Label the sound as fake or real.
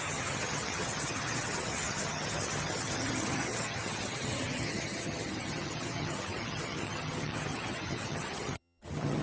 fake